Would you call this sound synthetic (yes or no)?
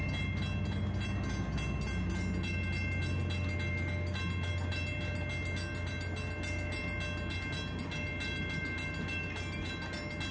no